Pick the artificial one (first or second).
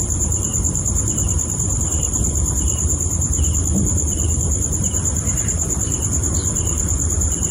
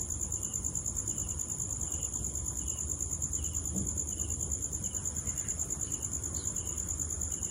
first